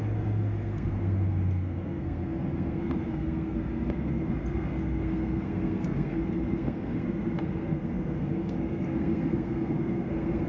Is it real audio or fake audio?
fake